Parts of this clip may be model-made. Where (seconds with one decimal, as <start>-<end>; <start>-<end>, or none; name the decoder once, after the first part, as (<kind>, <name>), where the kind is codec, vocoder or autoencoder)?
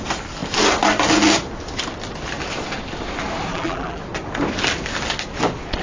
3.5-4.0 (vocoder, BigVGAN v2)